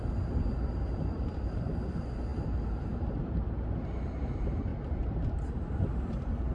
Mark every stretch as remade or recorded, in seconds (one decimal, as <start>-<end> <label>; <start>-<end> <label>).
0.0-0.7 recorded; 0.7-4.7 remade; 4.7-5.3 recorded; 5.3-6.5 remade